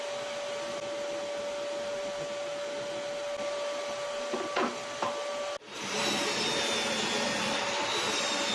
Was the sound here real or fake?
real